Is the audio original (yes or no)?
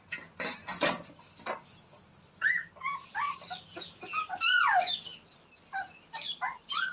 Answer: yes